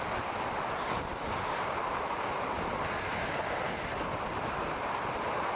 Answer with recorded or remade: recorded